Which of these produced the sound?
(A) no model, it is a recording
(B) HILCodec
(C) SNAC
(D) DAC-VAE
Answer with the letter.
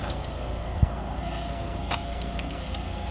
C